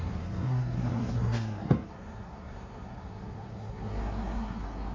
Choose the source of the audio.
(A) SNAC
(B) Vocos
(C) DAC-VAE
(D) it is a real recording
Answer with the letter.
A